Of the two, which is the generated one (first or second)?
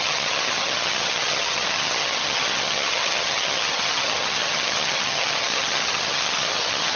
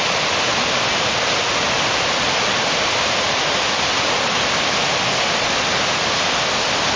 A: first